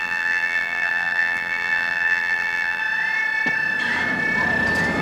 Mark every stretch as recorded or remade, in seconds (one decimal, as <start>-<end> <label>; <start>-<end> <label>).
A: 0.0-2.8 remade; 2.8-5.0 recorded